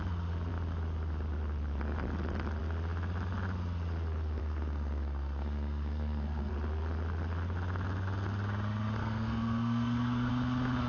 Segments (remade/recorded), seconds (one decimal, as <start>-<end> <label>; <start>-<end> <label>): 0.0-4.4 recorded; 4.4-6.5 remade; 6.5-9.0 recorded; 9.0-10.3 remade; 10.3-10.9 recorded